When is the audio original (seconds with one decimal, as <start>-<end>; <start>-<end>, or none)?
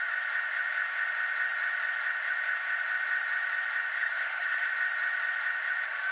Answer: 0.0-4.0; 4.7-6.1